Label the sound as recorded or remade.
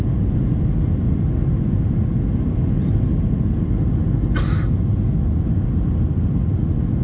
recorded